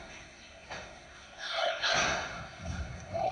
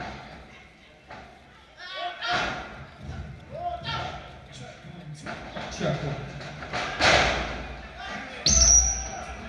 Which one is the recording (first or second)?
second